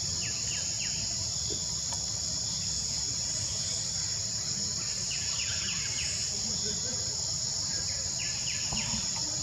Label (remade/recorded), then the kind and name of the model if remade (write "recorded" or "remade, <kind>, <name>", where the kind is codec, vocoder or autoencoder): recorded